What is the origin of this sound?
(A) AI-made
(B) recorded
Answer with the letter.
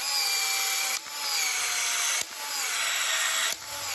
B